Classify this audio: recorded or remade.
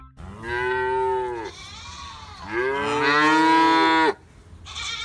recorded